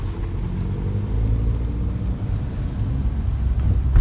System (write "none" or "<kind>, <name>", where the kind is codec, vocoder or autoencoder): none